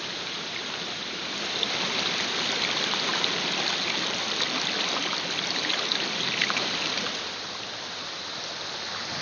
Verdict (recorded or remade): recorded